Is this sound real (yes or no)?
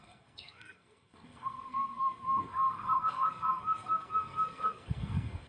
no